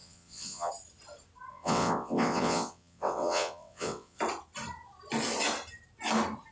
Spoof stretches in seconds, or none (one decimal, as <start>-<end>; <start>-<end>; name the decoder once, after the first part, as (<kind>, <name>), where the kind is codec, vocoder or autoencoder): 0.0-0.7 (vocoder, WaveNeXt); 1.5-4.2